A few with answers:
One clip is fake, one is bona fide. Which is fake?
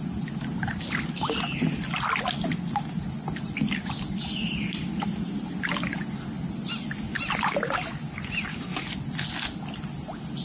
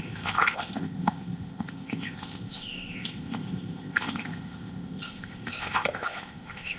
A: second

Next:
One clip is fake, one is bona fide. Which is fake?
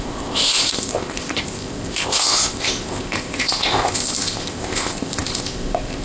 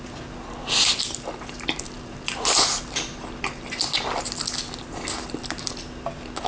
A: first